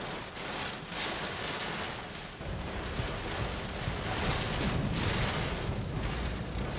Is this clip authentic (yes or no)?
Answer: yes